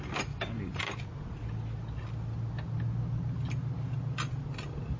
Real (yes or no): yes